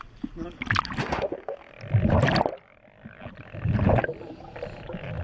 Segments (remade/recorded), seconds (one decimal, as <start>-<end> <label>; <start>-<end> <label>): 0.0-1.0 recorded; 1.0-1.7 remade; 1.7-5.2 recorded